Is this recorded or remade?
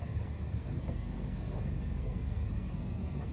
remade